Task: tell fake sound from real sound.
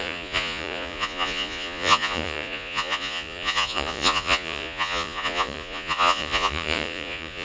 fake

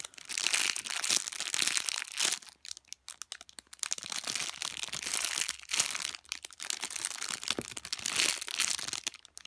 real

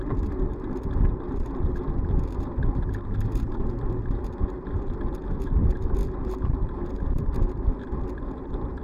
real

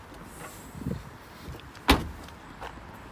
real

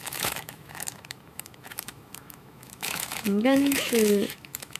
fake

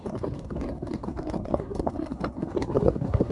fake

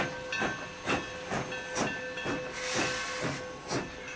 real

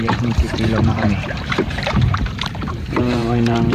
fake